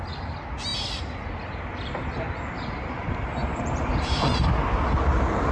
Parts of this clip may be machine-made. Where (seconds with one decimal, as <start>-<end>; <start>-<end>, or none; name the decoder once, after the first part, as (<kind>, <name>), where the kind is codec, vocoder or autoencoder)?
3.4-4.4 (vocoder, BigVGAN v2)